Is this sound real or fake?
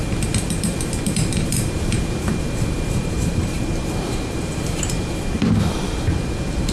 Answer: fake